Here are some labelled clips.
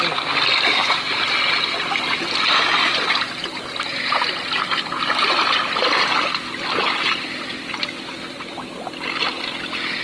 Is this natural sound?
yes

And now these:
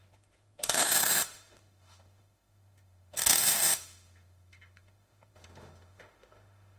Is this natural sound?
no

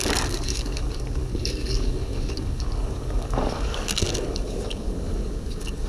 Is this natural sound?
no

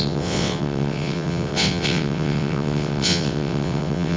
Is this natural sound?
no